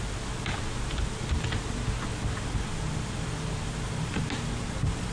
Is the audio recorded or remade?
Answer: recorded